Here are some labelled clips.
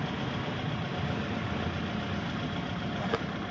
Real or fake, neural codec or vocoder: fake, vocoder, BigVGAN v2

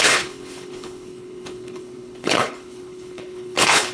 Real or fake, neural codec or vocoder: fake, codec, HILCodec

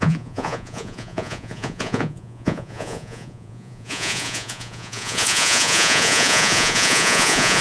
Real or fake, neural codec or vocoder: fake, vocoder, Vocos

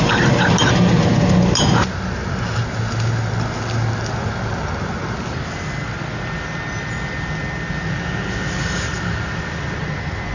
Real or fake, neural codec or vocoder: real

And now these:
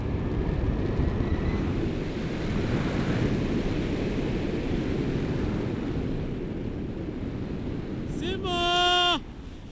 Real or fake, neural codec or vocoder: real